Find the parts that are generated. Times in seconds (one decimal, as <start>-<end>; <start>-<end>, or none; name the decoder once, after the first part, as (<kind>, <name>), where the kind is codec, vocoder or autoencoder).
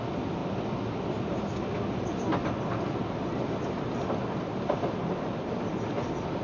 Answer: none